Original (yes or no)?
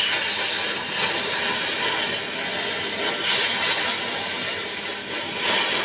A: yes